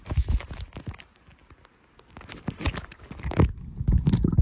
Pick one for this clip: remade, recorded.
recorded